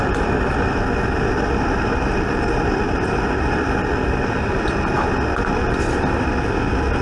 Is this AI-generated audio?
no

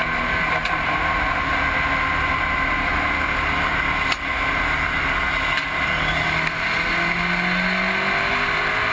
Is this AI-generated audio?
no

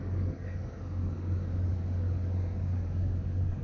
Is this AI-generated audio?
yes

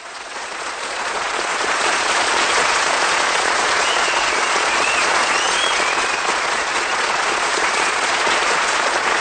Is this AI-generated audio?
yes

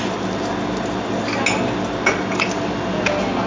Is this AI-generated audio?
no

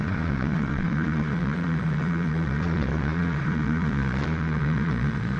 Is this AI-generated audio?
yes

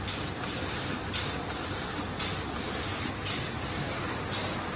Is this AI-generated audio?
no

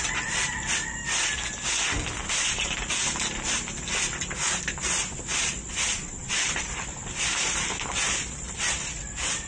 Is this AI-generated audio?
no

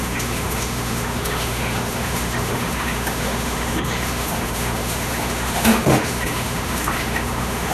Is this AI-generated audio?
yes